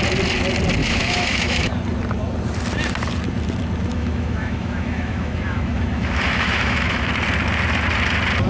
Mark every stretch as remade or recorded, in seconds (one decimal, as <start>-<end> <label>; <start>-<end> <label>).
0.0-0.8 recorded; 0.8-1.7 remade; 1.7-3.9 recorded; 3.9-7.1 remade; 7.1-8.5 recorded